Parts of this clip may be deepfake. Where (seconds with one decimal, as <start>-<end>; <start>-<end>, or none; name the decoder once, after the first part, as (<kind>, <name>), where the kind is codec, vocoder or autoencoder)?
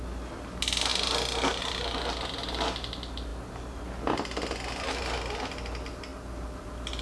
none